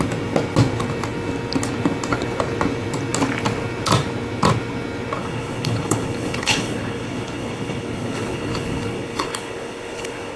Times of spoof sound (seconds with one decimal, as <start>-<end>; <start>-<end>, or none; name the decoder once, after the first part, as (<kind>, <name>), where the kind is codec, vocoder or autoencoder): 5.2-10.4 (codec, HILCodec)